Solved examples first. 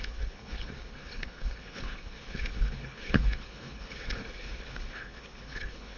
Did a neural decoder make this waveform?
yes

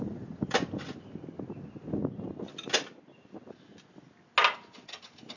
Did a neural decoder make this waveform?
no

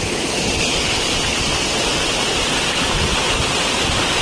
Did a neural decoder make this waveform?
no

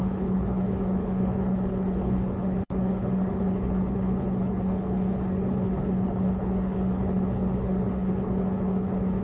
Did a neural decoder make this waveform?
yes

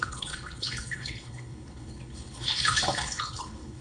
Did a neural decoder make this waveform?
yes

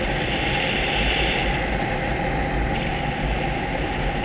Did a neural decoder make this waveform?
no